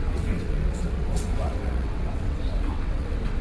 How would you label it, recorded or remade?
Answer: remade